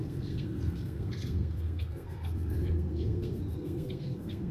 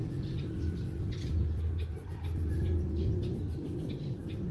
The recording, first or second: second